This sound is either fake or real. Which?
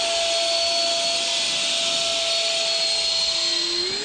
real